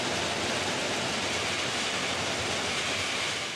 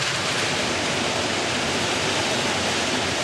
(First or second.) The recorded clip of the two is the first